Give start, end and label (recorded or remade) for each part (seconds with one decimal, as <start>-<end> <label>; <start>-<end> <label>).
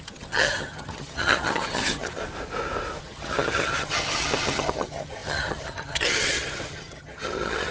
0.0-2.2 remade; 2.2-3.0 recorded; 3.0-7.7 remade